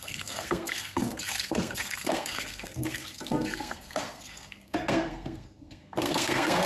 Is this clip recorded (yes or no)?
no